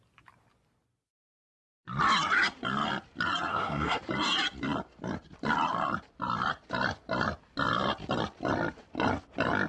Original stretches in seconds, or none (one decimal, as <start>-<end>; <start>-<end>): 0.0-3.5; 4.0-9.7